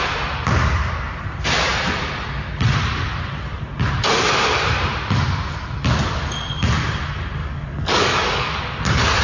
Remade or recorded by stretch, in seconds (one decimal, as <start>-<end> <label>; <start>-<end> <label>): 0.0-7.4 recorded; 7.4-8.6 remade; 8.6-9.2 recorded